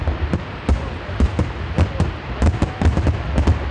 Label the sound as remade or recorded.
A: recorded